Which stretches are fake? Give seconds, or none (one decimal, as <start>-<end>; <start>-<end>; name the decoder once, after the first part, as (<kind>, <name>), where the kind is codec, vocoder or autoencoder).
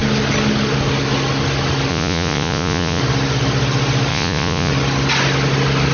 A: 1.9-3.0 (vocoder, Vocos); 4.1-4.7